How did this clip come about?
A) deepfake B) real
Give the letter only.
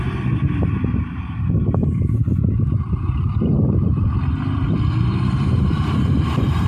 A